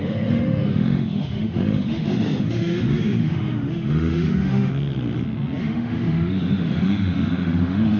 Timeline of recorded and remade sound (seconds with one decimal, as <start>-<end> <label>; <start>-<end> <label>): 0.0-4.7 remade; 4.7-5.6 recorded; 5.6-8.0 remade